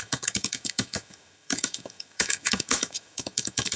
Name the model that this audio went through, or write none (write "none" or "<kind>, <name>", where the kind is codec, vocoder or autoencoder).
autoencoder, DAC-VAE